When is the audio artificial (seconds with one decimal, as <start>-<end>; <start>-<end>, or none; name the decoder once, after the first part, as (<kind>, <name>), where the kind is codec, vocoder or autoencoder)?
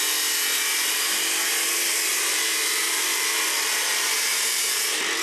2.1-2.8 (vocoder, BigVGAN v2)